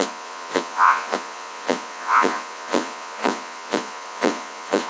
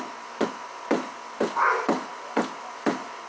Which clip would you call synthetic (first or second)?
first